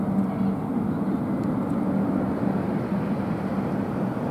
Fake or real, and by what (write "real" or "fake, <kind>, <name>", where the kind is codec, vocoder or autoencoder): real